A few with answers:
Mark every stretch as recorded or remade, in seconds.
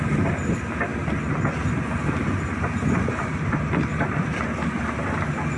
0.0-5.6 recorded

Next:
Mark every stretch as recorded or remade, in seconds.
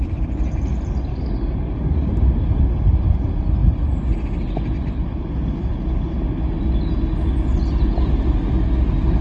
0.0-1.1 recorded; 1.1-2.1 remade; 2.1-9.2 recorded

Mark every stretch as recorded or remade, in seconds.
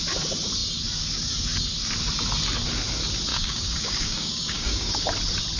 0.0-3.3 recorded; 3.3-5.1 remade; 5.1-5.6 recorded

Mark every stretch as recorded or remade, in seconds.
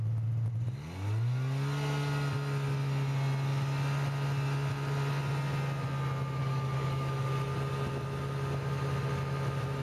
0.0-6.4 recorded; 6.4-7.3 remade; 7.3-9.8 recorded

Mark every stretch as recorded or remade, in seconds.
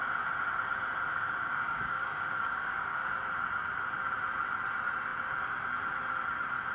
0.0-1.1 recorded; 1.1-3.1 remade; 3.1-6.7 recorded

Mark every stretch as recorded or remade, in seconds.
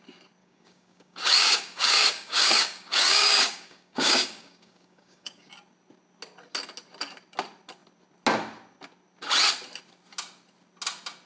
0.0-0.4 recorded; 0.4-5.5 remade; 5.5-11.3 recorded